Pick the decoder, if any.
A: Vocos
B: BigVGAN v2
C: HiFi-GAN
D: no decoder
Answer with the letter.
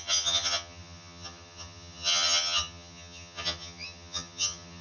C